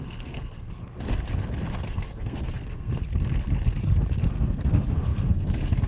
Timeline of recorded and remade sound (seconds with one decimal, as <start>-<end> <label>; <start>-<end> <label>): 0.0-0.8 remade; 0.8-1.9 recorded; 1.9-3.0 remade; 3.0-4.3 recorded; 4.3-5.9 remade